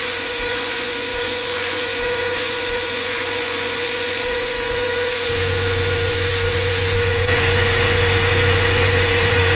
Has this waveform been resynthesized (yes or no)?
yes